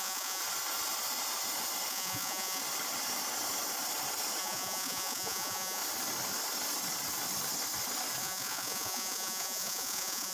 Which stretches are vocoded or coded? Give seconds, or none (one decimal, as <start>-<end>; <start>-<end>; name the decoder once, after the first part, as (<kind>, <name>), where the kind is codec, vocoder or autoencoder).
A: 0.0-0.4 (vocoder, Vocos); 1.9-2.6; 4.4-5.8; 8.2-10.3